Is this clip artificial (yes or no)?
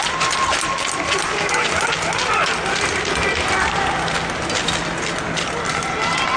no